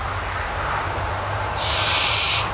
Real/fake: fake